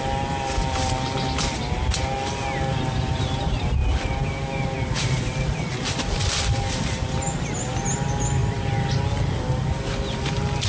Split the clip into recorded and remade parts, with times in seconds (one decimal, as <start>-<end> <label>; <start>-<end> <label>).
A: 0.0-10.7 recorded